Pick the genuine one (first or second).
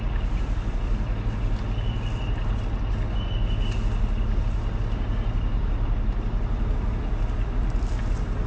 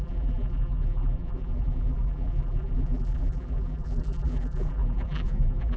first